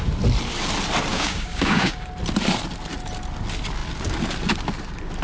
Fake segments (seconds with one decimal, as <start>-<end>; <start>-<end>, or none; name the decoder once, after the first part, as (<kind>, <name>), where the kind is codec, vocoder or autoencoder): 1.1-2.1 (codec, DAC)